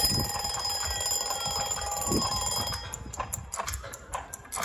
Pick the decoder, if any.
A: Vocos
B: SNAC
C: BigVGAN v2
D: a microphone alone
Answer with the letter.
D